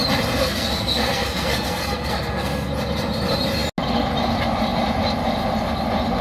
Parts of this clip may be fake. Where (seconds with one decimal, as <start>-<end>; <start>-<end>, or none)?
0.4-2.7